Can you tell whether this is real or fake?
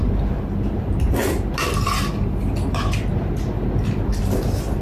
real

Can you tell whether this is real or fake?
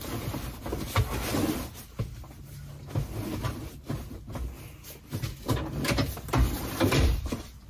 real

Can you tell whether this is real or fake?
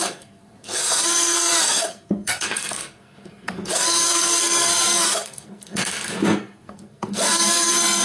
fake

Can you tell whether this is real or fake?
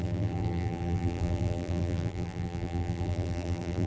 fake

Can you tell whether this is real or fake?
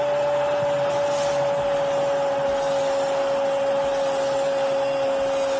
real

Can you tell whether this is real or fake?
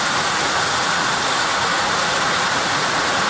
fake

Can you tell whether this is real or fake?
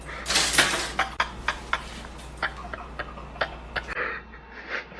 real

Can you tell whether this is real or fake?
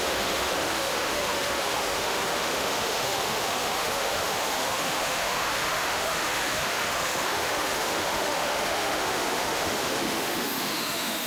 fake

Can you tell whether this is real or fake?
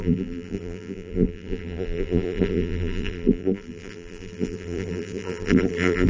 fake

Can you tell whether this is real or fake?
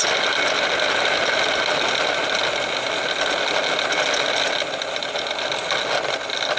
real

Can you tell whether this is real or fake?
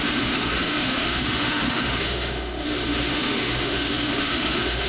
fake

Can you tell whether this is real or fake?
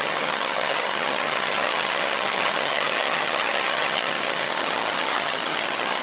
fake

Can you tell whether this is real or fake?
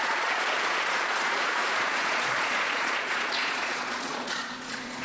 fake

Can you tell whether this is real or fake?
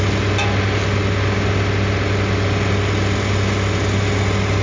real